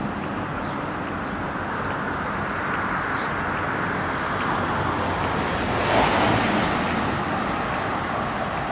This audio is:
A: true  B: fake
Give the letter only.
A